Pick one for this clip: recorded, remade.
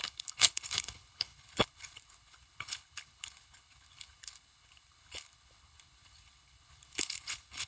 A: remade